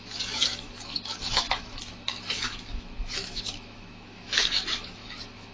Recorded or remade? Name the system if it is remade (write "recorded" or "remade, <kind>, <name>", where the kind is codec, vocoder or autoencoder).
remade, autoencoder, DAC-VAE